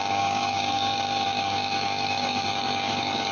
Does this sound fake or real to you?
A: fake